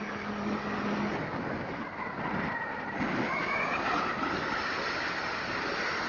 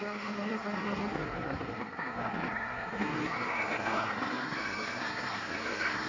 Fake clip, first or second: second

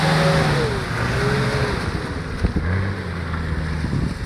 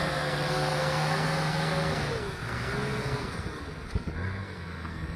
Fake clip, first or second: second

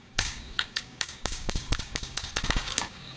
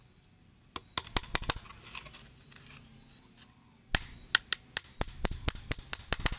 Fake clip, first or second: first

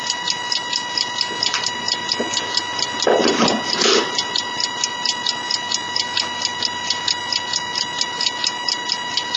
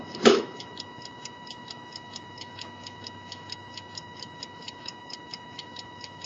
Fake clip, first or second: second